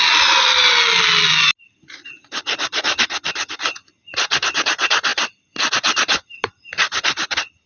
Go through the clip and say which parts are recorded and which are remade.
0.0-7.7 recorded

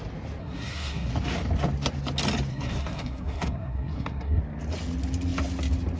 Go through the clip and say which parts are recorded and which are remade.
0.0-0.4 recorded; 0.4-1.1 remade; 1.1-2.5 recorded; 2.5-4.4 remade; 4.4-6.0 recorded

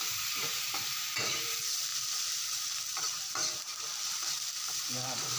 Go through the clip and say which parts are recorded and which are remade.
0.0-1.9 remade; 1.9-3.0 recorded; 3.0-3.7 remade; 3.7-4.8 recorded; 4.8-5.4 remade

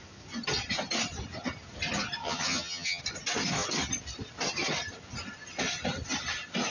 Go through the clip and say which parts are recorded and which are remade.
0.0-2.2 recorded; 2.2-3.0 remade; 3.0-6.7 recorded